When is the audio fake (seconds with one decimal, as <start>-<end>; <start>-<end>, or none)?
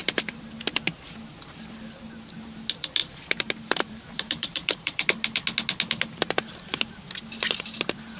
0.0-0.6; 3.0-5.1